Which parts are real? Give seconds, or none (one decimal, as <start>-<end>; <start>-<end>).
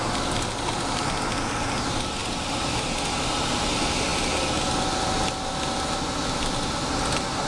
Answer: 0.0-7.5